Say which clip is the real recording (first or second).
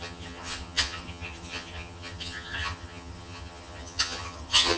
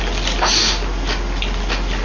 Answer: second